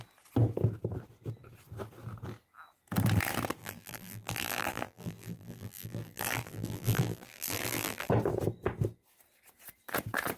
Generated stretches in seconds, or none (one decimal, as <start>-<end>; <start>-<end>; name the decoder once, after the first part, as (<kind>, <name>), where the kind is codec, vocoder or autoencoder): 3.6-8.1 (vocoder, BigVGAN v2)